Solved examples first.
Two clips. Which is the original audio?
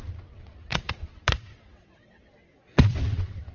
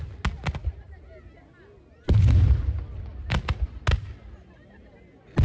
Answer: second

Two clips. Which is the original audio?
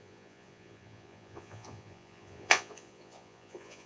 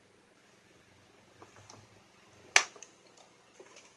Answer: second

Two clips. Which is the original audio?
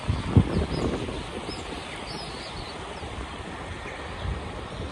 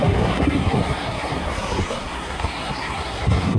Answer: first